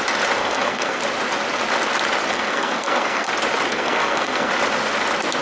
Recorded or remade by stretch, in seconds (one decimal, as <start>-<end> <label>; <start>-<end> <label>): 0.0-0.4 recorded; 0.4-1.0 remade; 1.0-2.3 recorded; 2.3-3.3 remade; 3.3-3.7 recorded; 3.7-4.5 remade; 4.5-5.4 recorded